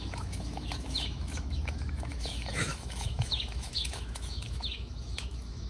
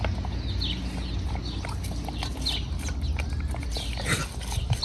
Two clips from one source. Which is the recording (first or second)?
second